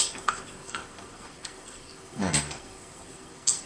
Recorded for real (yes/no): no